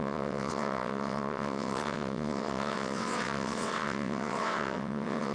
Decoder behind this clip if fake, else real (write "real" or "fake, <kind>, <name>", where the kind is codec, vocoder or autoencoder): fake, vocoder, WaveNeXt